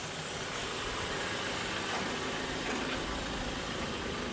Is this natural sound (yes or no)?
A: yes